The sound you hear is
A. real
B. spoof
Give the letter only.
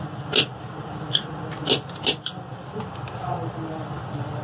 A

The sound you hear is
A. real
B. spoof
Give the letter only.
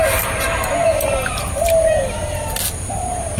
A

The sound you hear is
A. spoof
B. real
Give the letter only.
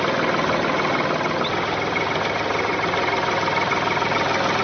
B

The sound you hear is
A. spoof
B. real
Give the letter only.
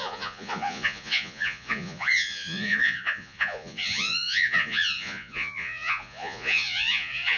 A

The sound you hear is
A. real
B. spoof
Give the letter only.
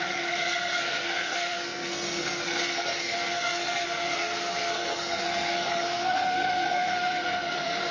B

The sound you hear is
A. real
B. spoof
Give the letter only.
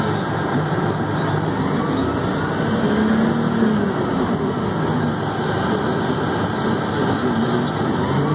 A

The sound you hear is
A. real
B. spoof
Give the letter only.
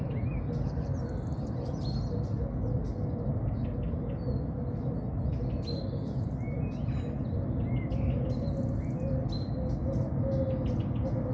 A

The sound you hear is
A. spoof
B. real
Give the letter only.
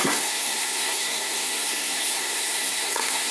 A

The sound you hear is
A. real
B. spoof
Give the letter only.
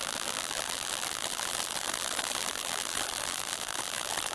B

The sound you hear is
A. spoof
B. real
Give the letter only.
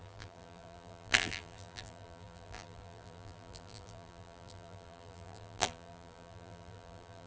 A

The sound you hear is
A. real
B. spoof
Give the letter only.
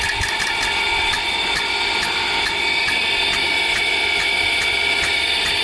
A